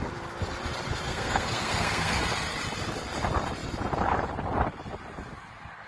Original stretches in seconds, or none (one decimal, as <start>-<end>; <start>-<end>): 0.0-1.1; 2.2-5.9